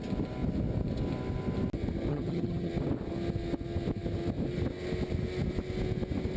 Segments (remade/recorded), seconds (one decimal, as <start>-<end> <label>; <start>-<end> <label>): 0.0-2.1 recorded; 2.1-2.7 remade; 2.7-6.4 recorded